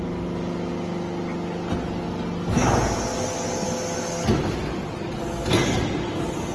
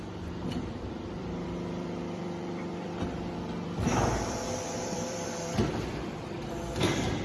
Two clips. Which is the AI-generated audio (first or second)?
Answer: second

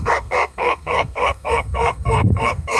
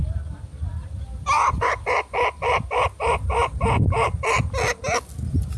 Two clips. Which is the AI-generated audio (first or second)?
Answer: first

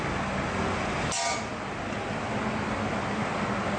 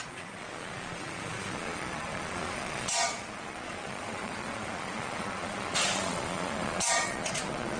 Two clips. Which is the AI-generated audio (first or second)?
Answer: second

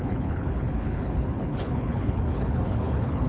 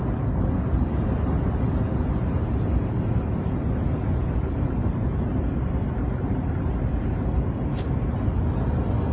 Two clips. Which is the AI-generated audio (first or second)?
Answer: first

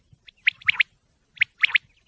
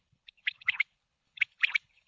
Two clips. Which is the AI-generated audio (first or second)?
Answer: second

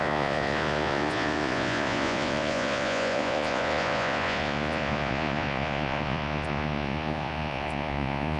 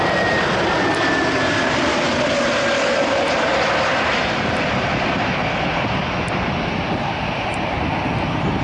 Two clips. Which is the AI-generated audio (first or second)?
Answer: first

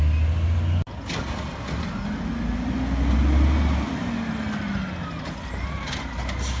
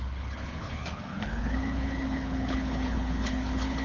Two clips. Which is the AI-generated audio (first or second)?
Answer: second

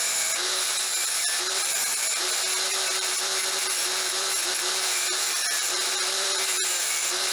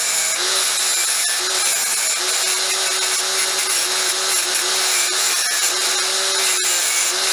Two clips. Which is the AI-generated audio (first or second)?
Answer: first